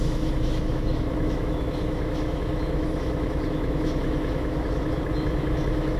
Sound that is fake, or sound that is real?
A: fake